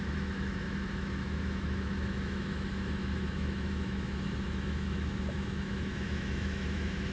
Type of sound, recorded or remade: remade